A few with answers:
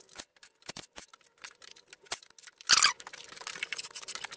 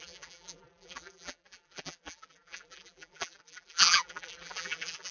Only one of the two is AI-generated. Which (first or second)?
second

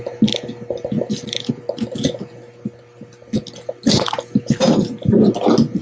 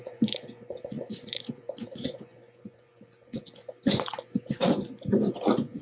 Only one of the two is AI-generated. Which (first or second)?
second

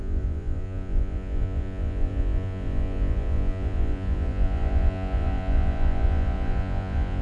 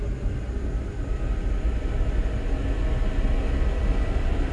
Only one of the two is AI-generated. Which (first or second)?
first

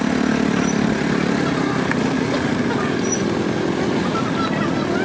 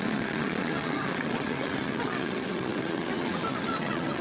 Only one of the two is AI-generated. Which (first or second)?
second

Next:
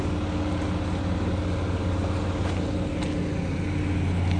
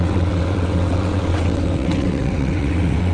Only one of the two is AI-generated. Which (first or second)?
second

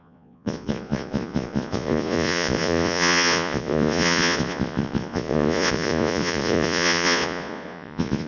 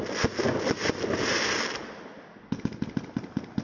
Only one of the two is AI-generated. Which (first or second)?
first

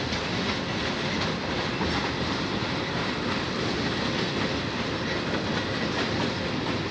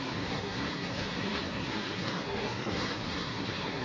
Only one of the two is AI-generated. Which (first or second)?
second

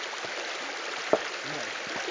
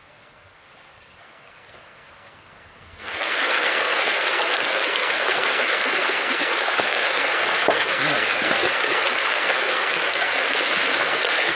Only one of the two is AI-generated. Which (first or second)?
second